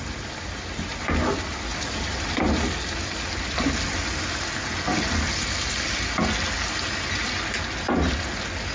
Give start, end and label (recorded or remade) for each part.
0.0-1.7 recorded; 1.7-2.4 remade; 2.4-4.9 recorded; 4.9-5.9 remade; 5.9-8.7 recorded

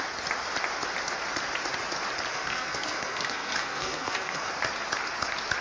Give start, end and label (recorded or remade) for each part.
0.0-2.3 recorded; 2.3-4.5 remade; 4.5-5.6 recorded

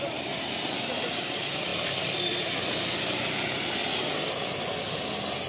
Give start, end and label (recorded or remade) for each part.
0.0-5.5 recorded

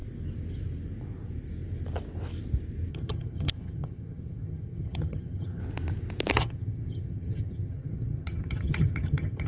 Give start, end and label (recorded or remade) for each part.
0.0-2.9 recorded; 2.9-5.6 remade; 5.6-6.3 recorded; 6.3-9.5 remade